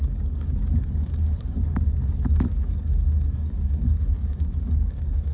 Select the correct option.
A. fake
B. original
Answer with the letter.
A